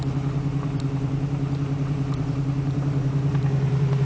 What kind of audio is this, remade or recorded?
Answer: remade